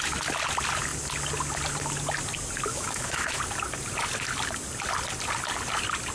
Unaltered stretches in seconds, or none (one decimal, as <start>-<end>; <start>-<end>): 0.0-2.7; 3.4-6.1